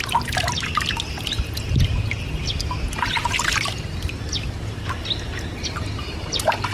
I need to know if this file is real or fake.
real